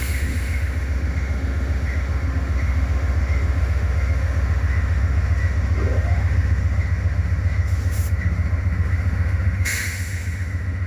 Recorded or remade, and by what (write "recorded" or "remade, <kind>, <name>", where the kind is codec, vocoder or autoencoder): remade, autoencoder, DAC-VAE